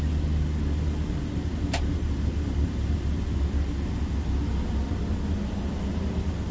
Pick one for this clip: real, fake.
real